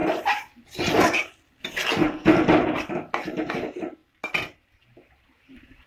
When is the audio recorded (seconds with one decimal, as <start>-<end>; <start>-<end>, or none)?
0.0-3.5; 4.0-4.8